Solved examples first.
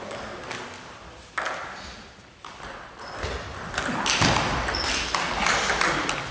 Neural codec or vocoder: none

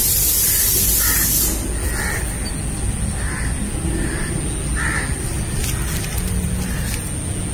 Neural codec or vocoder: none